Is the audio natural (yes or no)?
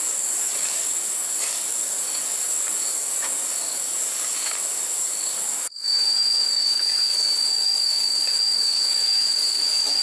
no